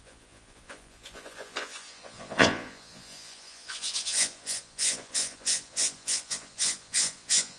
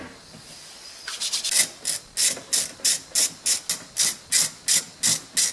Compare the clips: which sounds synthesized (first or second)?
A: first